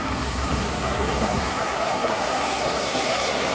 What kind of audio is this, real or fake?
fake